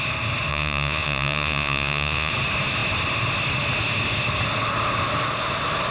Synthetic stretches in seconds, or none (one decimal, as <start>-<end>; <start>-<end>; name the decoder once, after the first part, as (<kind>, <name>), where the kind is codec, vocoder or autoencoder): 0.5-2.3 (vocoder, Vocos)